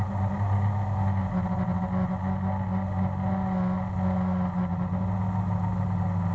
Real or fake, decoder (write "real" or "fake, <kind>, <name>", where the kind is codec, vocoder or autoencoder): real